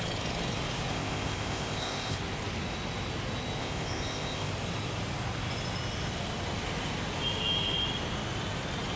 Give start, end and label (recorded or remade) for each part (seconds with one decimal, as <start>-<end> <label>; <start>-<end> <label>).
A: 0.0-0.9 recorded; 0.9-2.2 remade; 2.2-3.6 recorded; 3.6-4.5 remade; 4.5-9.0 recorded